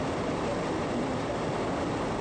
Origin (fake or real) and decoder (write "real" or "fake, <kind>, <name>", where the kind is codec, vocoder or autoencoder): real